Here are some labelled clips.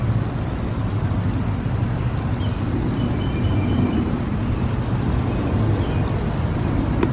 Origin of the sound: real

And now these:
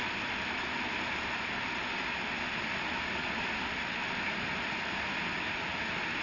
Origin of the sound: real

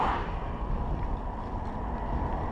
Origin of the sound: real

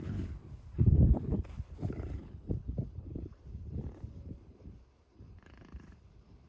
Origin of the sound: fake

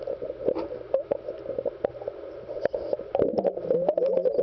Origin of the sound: real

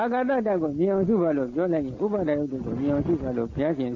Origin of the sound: real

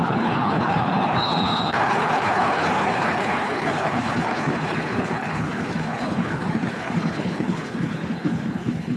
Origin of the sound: fake